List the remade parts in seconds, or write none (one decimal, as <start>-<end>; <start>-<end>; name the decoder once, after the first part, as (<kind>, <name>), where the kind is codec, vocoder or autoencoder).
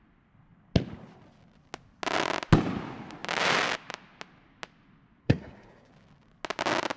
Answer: 5.2-5.9 (codec, SNAC)